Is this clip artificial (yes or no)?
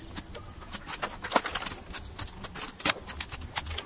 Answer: no